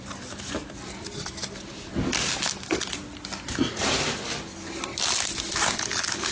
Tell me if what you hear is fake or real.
real